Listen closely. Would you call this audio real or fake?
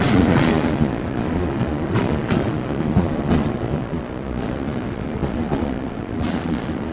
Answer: fake